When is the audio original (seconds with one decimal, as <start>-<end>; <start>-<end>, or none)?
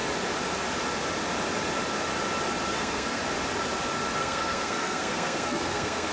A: 0.0-2.7; 3.2-4.2